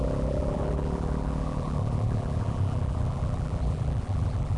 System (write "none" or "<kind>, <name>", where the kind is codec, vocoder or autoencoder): vocoder, BigVGAN v2